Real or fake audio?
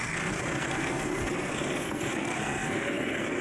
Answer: fake